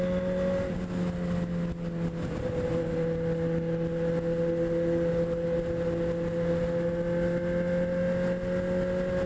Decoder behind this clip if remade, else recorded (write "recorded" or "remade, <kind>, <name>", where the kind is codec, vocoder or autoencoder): recorded